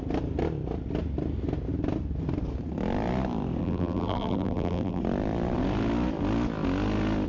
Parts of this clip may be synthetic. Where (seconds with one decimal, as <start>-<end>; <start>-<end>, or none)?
3.6-5.0